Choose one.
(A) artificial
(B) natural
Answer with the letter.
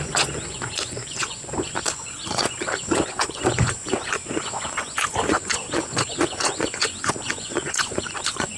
A